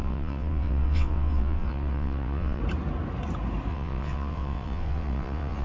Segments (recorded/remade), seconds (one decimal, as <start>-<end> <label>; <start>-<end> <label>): 0.0-2.6 remade; 2.6-3.7 recorded; 3.7-5.6 remade